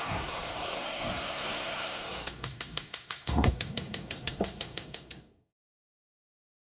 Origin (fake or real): fake